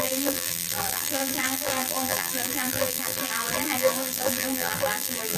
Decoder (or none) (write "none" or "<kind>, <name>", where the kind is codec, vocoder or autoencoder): vocoder, BigVGAN v2